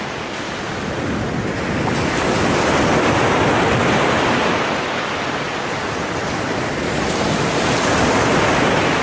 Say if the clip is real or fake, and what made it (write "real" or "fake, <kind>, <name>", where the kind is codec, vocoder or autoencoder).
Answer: real